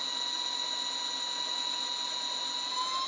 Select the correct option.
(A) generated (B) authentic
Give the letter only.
B